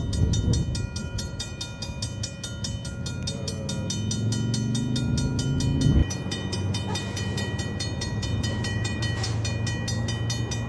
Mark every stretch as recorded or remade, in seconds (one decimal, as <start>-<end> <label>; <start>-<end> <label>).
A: 0.0-1.0 recorded; 1.0-1.6 remade; 1.6-6.0 recorded; 6.0-9.0 remade; 9.0-10.7 recorded